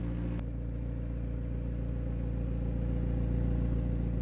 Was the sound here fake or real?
real